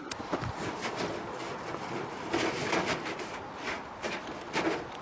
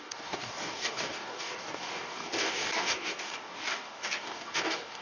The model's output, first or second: second